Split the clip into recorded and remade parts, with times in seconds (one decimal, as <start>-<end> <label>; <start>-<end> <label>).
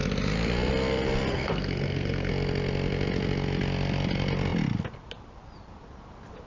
0.0-1.3 recorded; 1.3-2.3 remade; 2.3-6.5 recorded